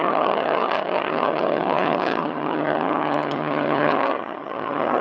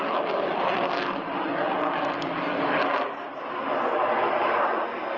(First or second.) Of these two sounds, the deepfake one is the first